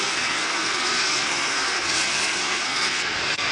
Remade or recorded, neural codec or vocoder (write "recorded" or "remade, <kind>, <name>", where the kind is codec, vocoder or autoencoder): remade, codec, SNAC